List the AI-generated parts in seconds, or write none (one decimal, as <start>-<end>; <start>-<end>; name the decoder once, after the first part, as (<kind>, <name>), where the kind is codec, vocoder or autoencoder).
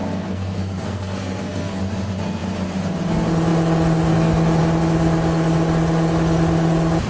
0.0-1.8 (codec, SNAC)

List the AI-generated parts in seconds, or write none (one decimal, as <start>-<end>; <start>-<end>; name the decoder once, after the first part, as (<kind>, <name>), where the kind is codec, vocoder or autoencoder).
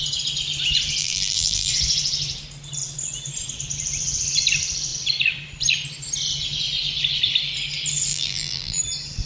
1.0-1.7 (vocoder, BigVGAN v2); 8.1-8.8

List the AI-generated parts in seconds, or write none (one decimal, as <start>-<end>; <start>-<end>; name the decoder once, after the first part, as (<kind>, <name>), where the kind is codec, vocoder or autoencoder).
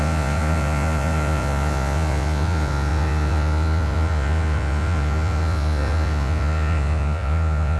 0.0-7.8 (vocoder, Vocos)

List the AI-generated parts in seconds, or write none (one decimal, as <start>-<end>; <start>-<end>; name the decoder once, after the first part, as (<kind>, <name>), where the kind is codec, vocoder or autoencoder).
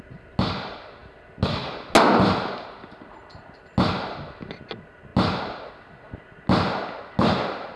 none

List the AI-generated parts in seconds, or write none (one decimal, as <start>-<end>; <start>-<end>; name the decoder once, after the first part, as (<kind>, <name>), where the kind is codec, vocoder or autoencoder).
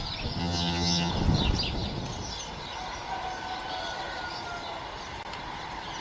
0.4-1.1 (vocoder, HiFi-GAN)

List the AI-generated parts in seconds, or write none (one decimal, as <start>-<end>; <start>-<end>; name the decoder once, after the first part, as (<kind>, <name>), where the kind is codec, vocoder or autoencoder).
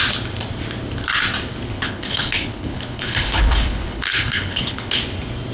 1.7-5.0 (codec, HILCodec)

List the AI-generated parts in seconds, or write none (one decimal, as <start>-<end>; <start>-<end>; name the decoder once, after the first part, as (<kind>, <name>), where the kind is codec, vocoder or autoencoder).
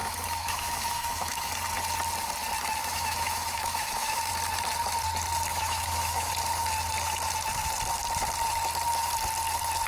0.0-1.5 (autoencoder, DAC-VAE); 2.8-4.3; 5.5-6.3